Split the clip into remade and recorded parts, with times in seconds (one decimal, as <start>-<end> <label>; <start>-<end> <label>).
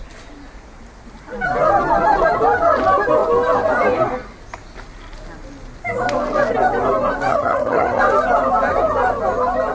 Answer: 0.0-7.3 recorded; 7.3-8.0 remade; 8.0-9.7 recorded